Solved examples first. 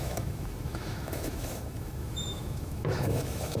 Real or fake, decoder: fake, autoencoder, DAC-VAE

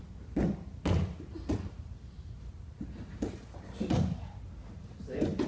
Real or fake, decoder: real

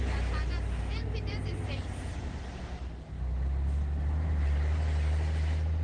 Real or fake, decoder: real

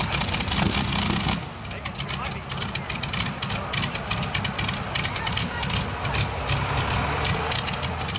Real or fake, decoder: real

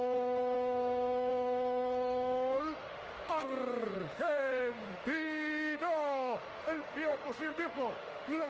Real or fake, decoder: fake, autoencoder, DAC-VAE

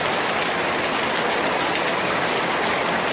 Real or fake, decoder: real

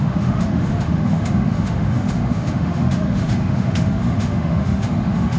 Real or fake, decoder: fake, autoencoder, DAC-VAE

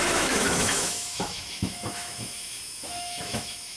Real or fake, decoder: fake, autoencoder, DAC-VAE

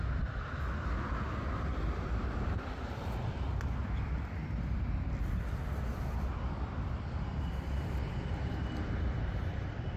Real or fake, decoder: real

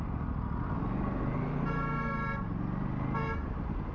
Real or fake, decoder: real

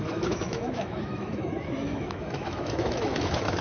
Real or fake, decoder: fake, autoencoder, DAC-VAE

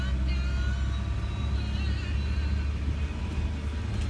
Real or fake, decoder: real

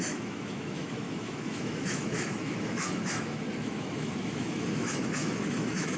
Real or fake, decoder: fake, autoencoder, DAC-VAE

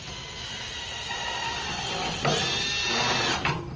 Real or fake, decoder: real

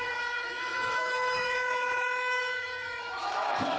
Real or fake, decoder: fake, autoencoder, DAC-VAE